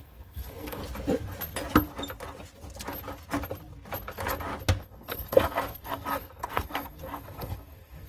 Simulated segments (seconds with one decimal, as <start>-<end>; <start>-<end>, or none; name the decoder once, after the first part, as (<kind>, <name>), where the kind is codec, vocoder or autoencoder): 0.0-0.8 (codec, SNAC); 4.8-8.1